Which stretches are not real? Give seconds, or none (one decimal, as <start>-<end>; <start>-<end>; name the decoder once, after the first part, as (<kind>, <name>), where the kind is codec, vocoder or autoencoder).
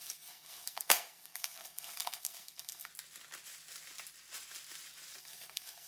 0.0-2.9 (codec, SNAC); 5.2-5.9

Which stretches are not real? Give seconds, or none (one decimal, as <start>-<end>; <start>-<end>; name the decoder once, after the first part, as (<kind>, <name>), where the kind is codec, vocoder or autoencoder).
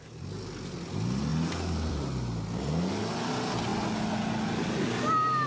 none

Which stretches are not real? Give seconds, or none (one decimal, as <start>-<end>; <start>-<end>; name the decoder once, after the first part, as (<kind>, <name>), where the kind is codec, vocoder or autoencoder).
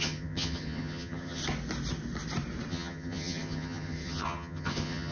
0.0-1.4 (vocoder, HiFi-GAN); 2.7-5.1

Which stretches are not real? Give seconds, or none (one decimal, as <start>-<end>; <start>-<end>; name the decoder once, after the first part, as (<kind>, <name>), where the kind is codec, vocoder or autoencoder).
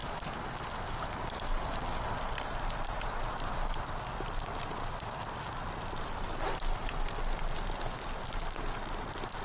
none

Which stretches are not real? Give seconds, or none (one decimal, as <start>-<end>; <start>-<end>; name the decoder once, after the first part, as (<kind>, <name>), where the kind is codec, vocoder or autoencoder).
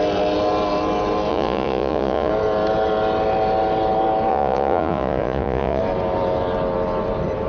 1.3-2.3 (vocoder, Vocos); 4.3-5.8